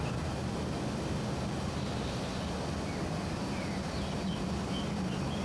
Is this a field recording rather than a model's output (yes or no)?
yes